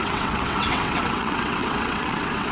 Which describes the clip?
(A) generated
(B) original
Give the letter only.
A